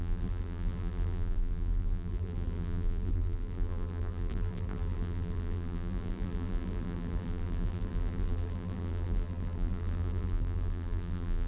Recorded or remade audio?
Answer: remade